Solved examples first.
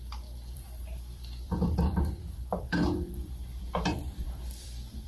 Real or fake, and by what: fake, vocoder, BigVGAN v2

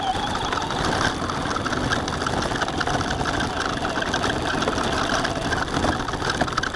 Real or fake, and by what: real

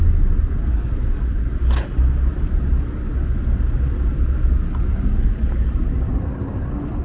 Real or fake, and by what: real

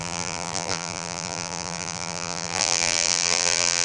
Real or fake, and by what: fake, vocoder, BigVGAN v2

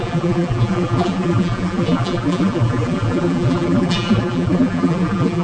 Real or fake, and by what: fake, vocoder, BigVGAN v2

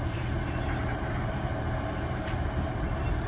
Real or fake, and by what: fake, vocoder, BigVGAN v2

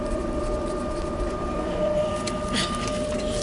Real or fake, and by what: fake, vocoder, BigVGAN v2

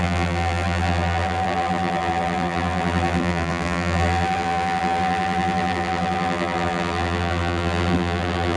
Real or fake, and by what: fake, vocoder, BigVGAN v2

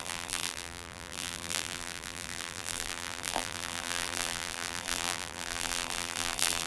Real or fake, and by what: fake, vocoder, BigVGAN v2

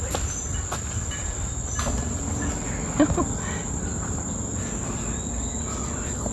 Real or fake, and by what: real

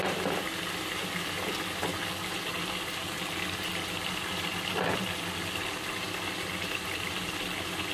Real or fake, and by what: real